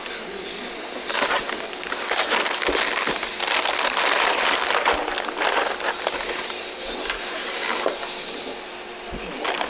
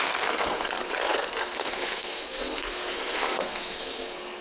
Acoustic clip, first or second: first